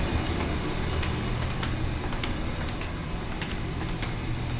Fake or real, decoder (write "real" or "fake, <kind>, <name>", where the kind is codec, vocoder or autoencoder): real